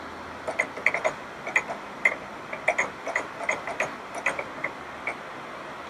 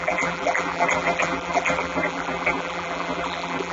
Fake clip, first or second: second